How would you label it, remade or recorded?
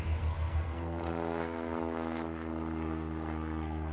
remade